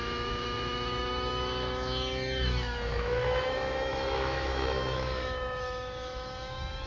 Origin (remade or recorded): remade